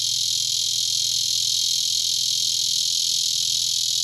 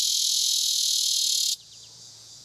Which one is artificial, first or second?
second